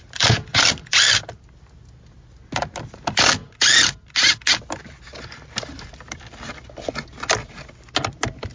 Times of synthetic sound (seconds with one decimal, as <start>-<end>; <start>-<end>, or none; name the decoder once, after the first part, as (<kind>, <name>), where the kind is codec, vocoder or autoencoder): none